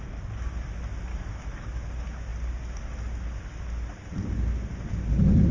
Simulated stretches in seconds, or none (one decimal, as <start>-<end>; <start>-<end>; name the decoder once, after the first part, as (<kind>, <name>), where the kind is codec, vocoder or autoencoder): 1.1-1.8 (autoencoder, DAC-VAE)